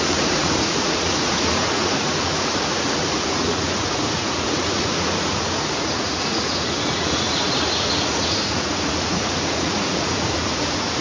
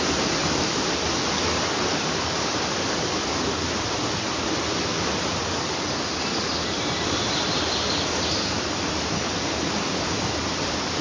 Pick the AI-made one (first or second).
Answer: first